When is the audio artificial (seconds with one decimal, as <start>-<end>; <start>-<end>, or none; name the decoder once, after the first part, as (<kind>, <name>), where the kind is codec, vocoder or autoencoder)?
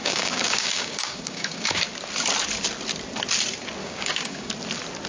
0.0-1.8 (codec, DAC); 3.8-4.5